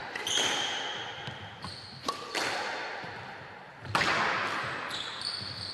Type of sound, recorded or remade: recorded